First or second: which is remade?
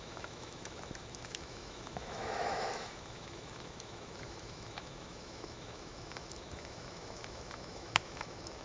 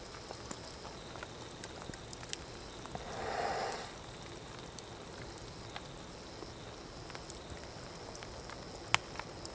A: first